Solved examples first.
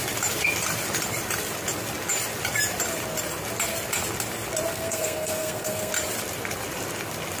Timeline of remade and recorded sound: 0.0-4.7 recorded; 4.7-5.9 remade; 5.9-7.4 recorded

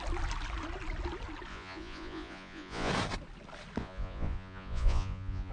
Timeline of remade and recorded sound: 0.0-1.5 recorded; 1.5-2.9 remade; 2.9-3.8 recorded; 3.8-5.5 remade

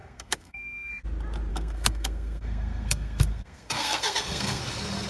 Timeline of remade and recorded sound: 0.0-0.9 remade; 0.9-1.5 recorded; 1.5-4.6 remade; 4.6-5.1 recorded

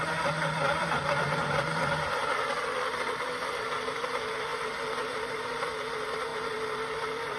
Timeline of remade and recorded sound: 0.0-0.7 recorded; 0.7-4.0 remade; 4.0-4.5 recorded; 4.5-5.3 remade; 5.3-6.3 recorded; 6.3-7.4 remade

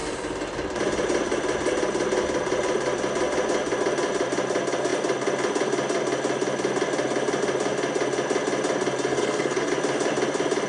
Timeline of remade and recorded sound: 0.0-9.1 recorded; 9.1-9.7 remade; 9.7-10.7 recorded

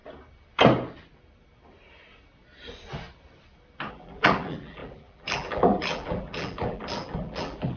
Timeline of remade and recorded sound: 0.0-3.9 recorded; 3.9-7.8 remade

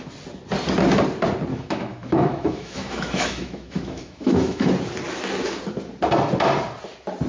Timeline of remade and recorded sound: 0.0-1.5 recorded; 1.5-4.7 remade; 4.7-7.3 recorded

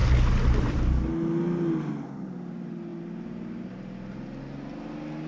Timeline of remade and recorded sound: 0.0-5.3 recorded